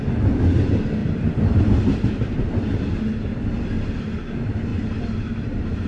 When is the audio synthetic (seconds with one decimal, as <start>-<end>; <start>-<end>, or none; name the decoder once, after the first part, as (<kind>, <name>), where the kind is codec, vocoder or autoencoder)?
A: 1.0-3.0 (vocoder, BigVGAN v2); 4.7-5.9

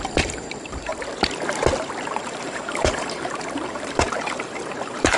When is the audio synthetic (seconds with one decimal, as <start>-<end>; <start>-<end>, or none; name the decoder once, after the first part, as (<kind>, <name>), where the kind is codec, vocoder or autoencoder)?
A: 0.0-0.9 (vocoder, BigVGAN v2); 2.0-5.2

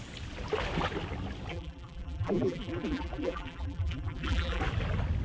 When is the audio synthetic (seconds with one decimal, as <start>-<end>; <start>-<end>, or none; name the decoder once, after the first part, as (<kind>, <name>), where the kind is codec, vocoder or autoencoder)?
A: 1.5-4.6 (vocoder, BigVGAN v2)

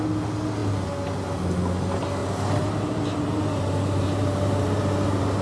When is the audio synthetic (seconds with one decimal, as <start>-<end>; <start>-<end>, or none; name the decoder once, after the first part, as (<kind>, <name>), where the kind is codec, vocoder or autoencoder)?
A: 2.2-5.4 (vocoder, BigVGAN v2)